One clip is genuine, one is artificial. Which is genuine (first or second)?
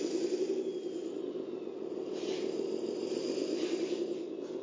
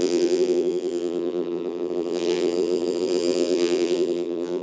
first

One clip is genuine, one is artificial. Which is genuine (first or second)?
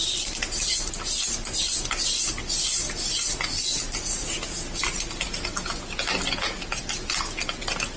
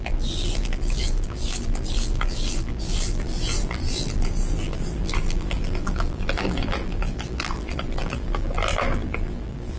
first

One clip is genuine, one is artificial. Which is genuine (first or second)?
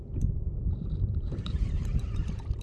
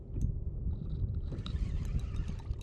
second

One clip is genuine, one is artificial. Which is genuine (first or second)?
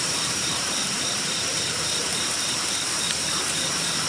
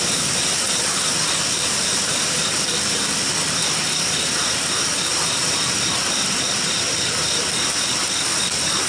second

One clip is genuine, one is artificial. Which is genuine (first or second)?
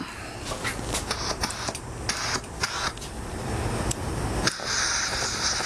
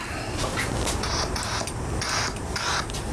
first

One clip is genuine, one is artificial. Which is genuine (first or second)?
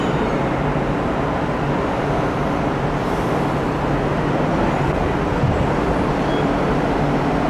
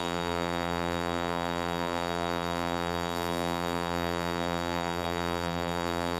first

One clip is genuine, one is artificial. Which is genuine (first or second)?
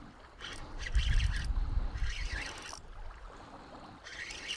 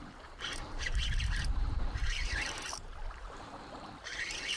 first